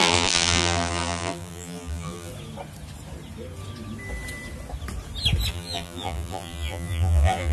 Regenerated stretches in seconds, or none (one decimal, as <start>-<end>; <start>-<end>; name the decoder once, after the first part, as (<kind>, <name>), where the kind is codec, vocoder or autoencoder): 0.0-2.3 (vocoder, BigVGAN v2); 5.5-7.5